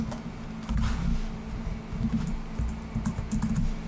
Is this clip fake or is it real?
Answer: real